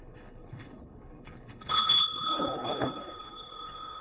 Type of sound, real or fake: fake